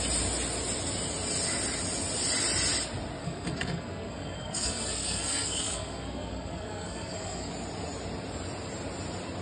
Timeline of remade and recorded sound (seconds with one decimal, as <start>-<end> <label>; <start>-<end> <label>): 0.0-3.2 recorded; 3.2-7.5 remade; 7.5-9.4 recorded